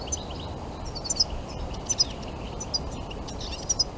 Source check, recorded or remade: recorded